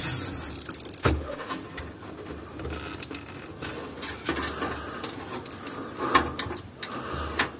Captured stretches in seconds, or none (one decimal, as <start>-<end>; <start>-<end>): 0.0-1.0; 1.5-7.6